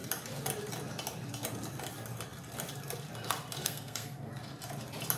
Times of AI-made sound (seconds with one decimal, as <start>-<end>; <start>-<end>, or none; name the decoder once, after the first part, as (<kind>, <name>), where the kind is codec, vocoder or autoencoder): 3.6-4.3 (codec, SNAC)